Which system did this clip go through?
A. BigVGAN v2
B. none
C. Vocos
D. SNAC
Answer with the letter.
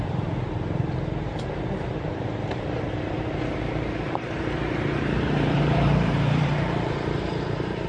A